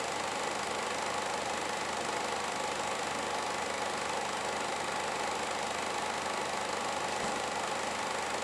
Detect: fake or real real